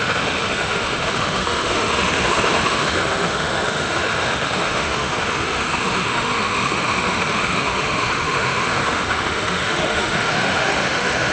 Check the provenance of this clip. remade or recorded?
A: remade